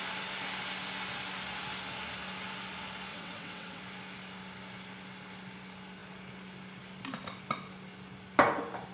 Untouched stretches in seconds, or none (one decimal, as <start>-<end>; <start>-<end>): 0.0-3.1; 3.8-8.9